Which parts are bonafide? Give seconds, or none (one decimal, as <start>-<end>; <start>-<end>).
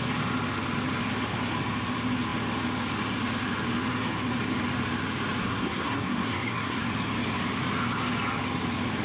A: 0.0-5.4; 6.9-9.0